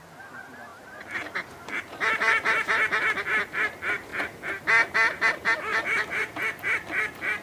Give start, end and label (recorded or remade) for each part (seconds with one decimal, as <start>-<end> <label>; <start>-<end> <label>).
0.0-7.4 recorded